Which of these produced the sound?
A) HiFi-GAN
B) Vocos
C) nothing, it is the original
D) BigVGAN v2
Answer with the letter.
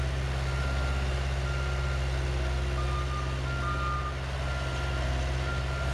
C